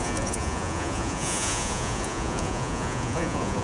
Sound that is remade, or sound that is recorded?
remade